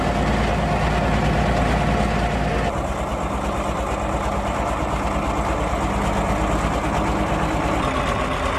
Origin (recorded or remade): recorded